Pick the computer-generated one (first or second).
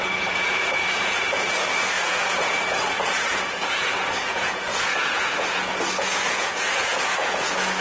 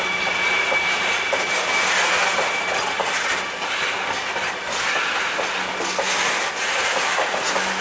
first